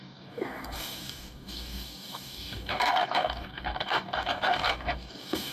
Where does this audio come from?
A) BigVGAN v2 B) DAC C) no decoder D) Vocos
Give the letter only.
B